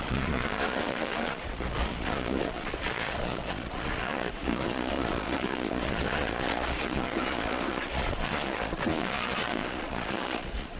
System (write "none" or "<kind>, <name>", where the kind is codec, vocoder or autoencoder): vocoder, Vocos